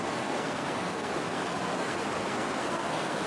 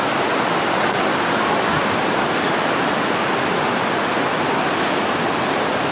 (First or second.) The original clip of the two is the second